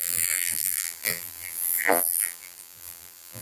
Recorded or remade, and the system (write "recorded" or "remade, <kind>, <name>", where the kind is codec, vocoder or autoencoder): remade, vocoder, BigVGAN v2